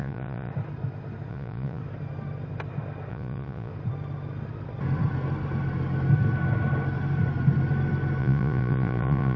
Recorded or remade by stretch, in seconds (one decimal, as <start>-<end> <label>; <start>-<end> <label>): 0.0-0.5 remade; 0.5-1.3 recorded; 1.3-1.8 remade; 1.8-3.1 recorded; 3.1-3.7 remade; 3.7-8.2 recorded; 8.2-9.4 remade